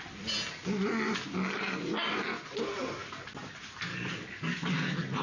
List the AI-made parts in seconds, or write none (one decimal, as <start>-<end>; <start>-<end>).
3.9-4.7